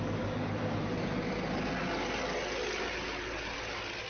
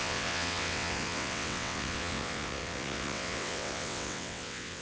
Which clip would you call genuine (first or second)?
first